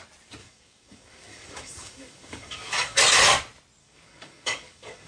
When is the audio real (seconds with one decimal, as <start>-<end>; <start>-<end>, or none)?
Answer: 0.0-0.4; 3.0-3.8